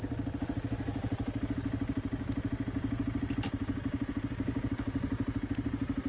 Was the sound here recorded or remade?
recorded